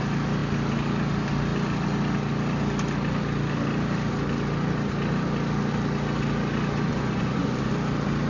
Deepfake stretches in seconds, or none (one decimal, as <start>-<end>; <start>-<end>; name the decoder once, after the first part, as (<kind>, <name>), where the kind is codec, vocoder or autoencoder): 6.9-7.7 (vocoder, Vocos)